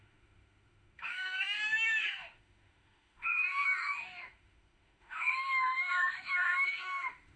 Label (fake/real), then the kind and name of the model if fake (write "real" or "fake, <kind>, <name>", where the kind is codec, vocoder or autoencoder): fake, autoencoder, DAC-VAE